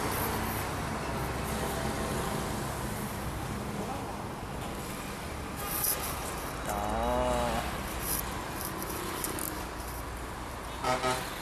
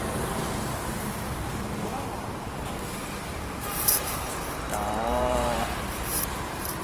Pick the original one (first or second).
first